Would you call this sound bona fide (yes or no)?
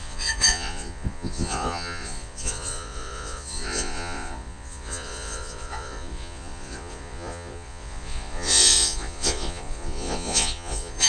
no